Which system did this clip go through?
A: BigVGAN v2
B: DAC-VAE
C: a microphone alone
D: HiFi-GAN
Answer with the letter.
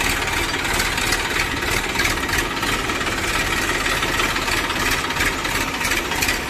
C